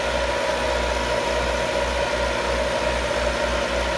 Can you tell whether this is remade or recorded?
recorded